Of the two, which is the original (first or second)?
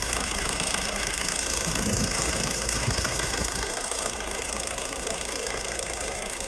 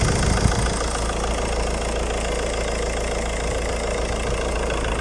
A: second